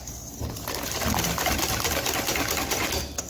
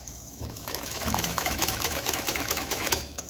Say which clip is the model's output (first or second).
second